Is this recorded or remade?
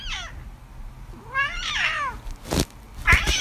recorded